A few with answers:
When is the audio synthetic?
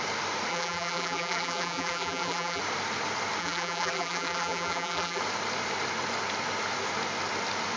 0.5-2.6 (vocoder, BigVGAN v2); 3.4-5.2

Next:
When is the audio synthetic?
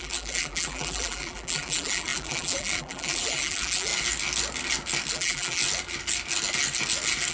0.0-3.9 (vocoder, BigVGAN v2); 5.1-5.6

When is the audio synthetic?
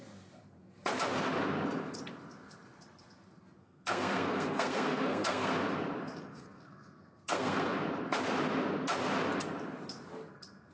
3.6-5.5 (codec, SNAC); 6.3-7.7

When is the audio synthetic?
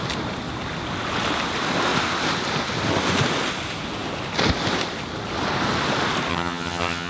6.3-7.1 (vocoder, HiFi-GAN)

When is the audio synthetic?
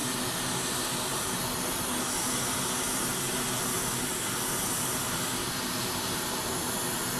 5.4-6.7 (vocoder, BigVGAN v2)